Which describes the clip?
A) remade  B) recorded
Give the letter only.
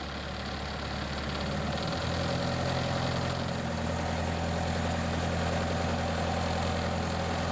B